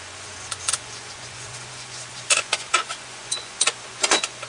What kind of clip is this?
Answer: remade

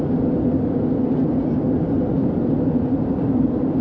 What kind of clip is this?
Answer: recorded